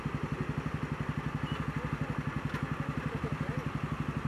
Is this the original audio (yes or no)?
yes